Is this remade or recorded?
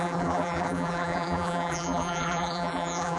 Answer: remade